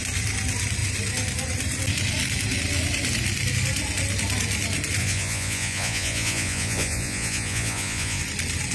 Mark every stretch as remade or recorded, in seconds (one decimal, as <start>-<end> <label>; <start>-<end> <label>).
0.0-5.0 recorded; 5.0-8.2 remade; 8.2-8.7 recorded